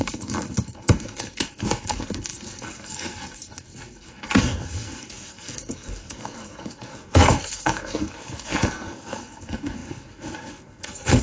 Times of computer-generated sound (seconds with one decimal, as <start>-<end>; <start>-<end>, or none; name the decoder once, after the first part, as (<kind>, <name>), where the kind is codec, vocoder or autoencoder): 0.0-11.2 (codec, SNAC)